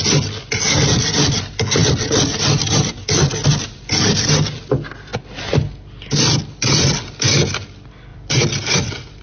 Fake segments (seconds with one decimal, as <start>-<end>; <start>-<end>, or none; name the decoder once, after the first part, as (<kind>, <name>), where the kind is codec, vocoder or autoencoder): 8.1-9.2 (vocoder, BigVGAN v2)

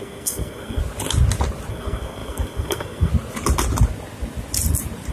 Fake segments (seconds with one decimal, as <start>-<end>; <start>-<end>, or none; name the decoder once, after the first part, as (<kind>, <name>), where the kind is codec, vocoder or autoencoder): 0.0-0.8 (codec, SNAC); 1.7-3.1

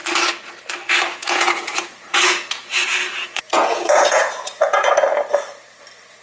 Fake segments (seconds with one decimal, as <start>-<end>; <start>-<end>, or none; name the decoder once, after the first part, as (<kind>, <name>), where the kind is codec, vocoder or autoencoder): 1.2-4.9 (vocoder, Vocos)

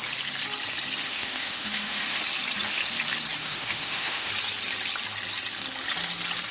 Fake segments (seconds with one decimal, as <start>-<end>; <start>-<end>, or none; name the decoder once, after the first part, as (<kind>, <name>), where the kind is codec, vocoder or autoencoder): 1.0-2.2 (autoencoder, DAC-VAE); 3.4-4.3

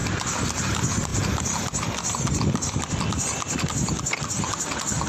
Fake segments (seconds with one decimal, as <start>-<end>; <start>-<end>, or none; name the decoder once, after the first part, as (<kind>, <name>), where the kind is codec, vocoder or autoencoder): none